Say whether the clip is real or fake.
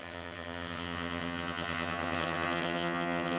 fake